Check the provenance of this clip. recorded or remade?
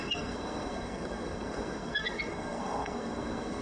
remade